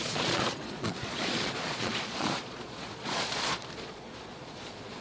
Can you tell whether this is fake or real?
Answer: fake